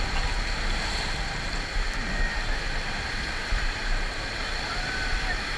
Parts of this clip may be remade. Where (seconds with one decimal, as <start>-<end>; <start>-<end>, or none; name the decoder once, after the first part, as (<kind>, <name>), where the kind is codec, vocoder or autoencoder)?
none